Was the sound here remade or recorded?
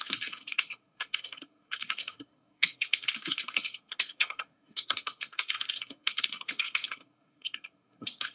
remade